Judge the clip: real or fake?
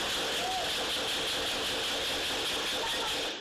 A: real